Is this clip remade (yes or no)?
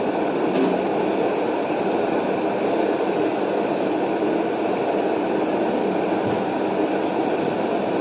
no